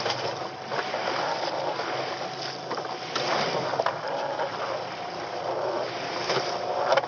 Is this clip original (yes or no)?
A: yes